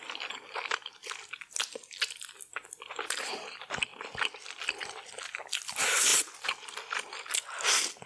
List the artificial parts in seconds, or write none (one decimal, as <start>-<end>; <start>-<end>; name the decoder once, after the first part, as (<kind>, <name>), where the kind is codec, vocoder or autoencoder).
none